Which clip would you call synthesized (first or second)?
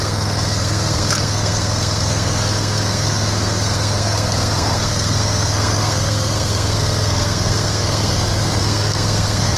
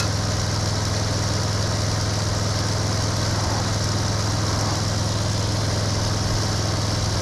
first